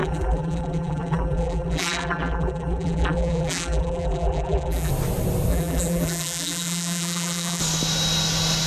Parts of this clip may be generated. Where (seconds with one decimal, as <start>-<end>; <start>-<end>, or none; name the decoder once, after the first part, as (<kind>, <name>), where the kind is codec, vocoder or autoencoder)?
0.0-4.9 (vocoder, BigVGAN v2); 5.5-7.6